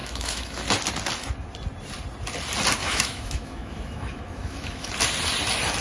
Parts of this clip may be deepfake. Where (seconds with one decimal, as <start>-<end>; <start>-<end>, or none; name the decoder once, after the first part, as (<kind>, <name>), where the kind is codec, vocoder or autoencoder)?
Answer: 0.0-0.6 (autoencoder, DAC-VAE); 2.8-4.9